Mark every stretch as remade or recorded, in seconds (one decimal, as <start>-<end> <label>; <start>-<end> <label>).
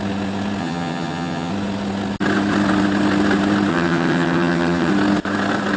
0.0-0.6 recorded; 0.6-1.5 remade; 1.5-3.7 recorded; 3.7-4.9 remade; 4.9-5.8 recorded